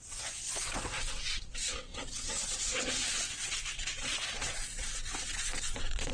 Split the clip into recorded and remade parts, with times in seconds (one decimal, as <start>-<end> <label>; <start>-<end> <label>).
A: 0.0-6.1 remade